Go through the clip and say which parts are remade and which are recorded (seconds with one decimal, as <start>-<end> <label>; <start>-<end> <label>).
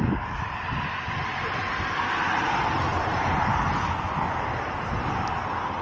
0.0-5.8 recorded